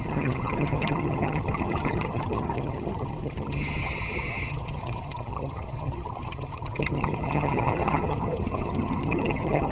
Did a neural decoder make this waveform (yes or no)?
yes